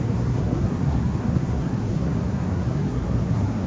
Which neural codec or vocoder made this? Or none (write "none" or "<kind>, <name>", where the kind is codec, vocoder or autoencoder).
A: codec, SNAC